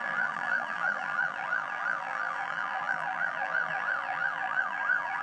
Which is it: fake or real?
fake